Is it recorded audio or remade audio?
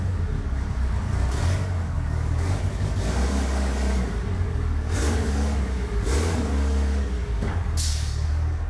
remade